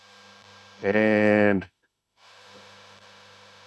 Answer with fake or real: fake